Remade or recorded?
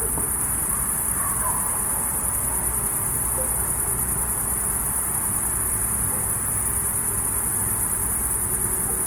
recorded